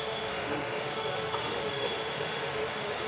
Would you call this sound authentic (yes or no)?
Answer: no